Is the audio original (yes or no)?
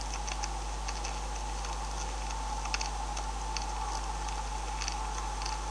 yes